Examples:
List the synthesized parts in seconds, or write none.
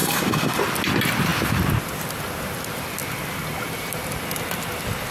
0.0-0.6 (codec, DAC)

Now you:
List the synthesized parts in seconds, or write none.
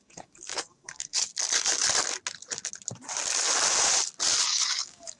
0.0-1.3 (codec, DAC); 4.4-5.2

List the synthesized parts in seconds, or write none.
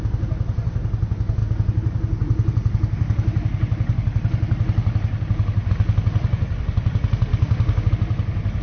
7.3-7.9 (codec, DAC)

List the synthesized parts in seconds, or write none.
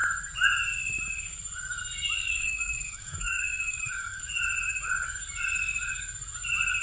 2.2-4.2 (codec, DAC)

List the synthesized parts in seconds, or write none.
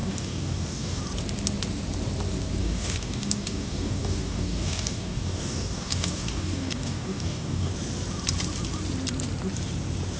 0.0-1.0 (codec, DAC); 2.6-7.7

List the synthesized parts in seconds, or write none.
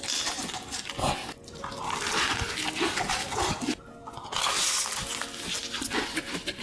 none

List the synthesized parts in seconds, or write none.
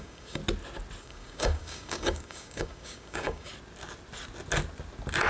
0.0-0.4 (codec, DAC); 1.0-3.5